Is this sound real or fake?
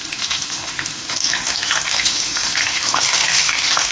fake